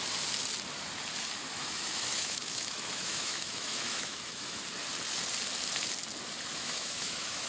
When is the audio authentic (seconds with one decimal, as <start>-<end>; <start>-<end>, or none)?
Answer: 0.0-1.5; 4.6-6.5